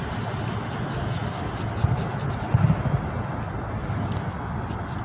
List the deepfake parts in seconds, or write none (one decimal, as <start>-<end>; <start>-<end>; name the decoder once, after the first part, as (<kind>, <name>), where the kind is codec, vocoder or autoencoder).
none